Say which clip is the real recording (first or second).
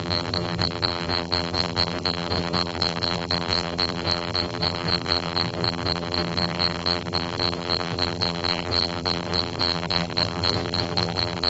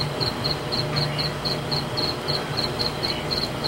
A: second